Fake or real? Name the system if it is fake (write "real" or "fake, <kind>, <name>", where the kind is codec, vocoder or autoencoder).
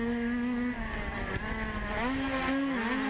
real